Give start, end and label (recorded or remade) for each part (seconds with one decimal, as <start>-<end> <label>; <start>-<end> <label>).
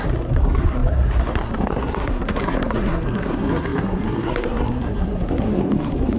0.0-6.2 remade